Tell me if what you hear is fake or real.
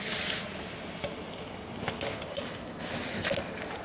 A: real